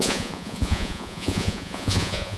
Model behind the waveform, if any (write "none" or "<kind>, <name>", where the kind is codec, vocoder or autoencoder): vocoder, Vocos